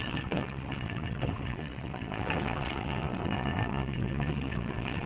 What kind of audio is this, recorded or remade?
remade